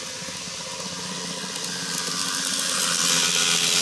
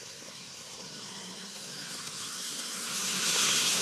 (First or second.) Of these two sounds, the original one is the first